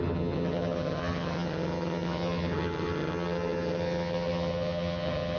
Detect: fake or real fake